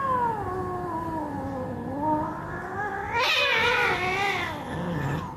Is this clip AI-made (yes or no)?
no